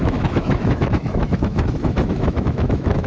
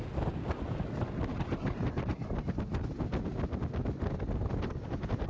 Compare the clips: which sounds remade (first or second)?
first